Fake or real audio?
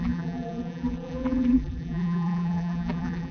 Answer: fake